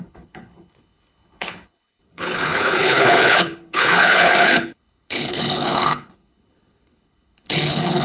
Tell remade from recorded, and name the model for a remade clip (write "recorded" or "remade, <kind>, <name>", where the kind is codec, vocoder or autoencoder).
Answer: remade, codec, HILCodec